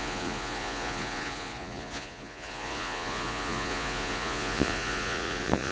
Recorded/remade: remade